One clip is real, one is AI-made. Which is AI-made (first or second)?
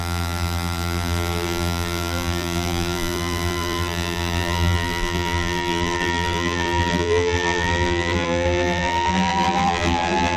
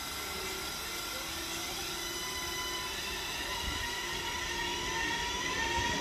first